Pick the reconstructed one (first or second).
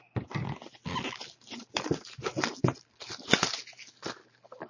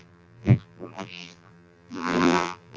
second